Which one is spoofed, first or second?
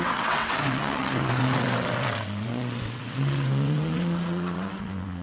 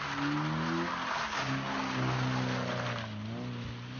first